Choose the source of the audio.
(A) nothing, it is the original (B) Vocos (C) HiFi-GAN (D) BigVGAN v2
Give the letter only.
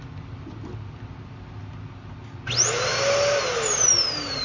A